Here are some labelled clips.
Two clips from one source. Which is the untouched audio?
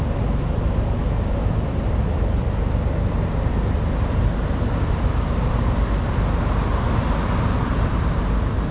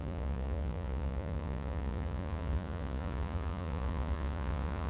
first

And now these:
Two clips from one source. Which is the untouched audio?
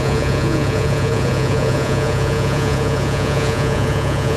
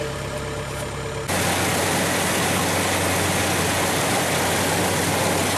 second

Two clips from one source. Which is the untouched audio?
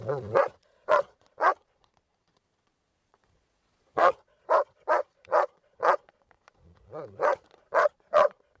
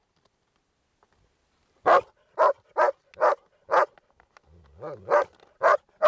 second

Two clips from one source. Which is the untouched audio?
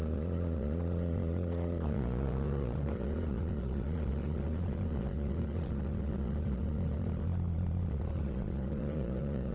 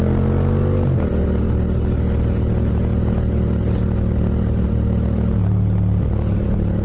second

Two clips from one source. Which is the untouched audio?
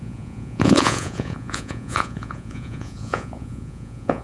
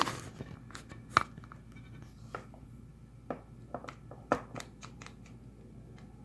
second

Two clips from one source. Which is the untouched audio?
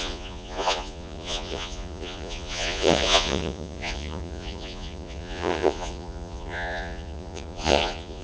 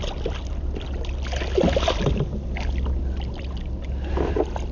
second